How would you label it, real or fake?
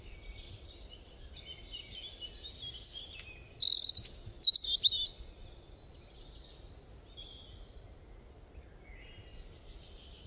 real